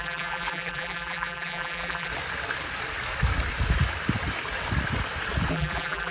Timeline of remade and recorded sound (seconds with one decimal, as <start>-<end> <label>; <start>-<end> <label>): 0.0-2.1 remade; 2.1-5.5 recorded; 5.5-6.1 remade